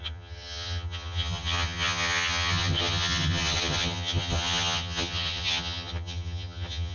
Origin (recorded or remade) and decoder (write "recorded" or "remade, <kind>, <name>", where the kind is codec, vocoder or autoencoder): remade, vocoder, HiFi-GAN